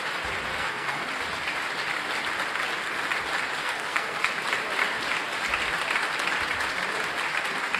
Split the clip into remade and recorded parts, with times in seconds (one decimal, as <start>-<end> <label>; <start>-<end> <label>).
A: 0.0-0.5 recorded; 0.5-1.1 remade; 1.1-3.6 recorded; 3.6-4.3 remade; 4.3-7.8 recorded